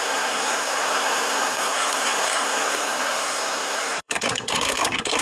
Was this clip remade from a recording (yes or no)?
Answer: yes